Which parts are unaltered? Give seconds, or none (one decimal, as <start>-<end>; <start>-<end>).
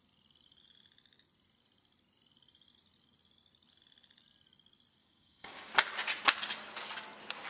0.0-5.0; 5.7-7.5